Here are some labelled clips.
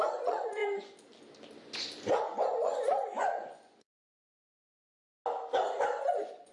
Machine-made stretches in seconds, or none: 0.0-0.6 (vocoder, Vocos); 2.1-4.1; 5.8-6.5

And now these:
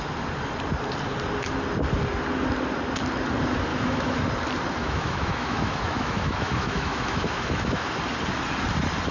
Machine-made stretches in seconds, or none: 3.7-4.2 (autoencoder, DAC-VAE); 4.8-7.9

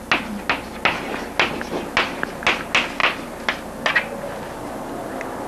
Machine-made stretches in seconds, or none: none

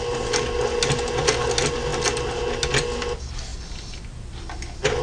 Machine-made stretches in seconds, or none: none

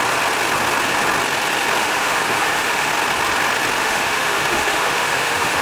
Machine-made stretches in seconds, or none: 1.8-2.9 (autoencoder, DAC-VAE); 3.8-5.6

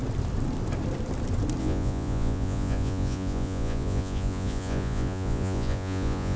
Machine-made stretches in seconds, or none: 1.6-6.4 (vocoder, Vocos)

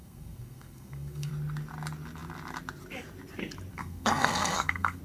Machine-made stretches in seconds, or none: 0.0-1.3 (codec, SNAC); 3.7-5.0